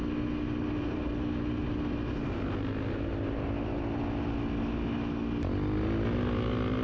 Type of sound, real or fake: real